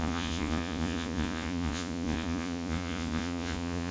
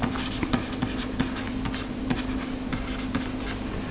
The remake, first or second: first